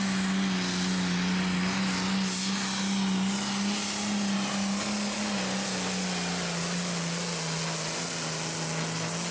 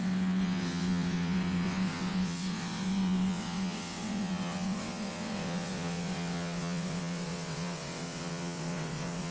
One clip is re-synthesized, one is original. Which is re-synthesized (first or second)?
second